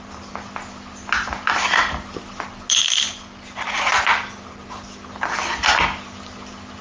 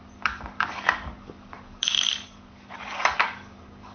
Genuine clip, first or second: first